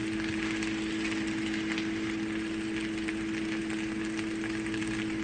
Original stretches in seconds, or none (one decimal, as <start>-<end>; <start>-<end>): 0.0-5.2